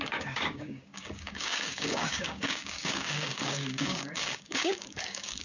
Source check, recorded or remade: remade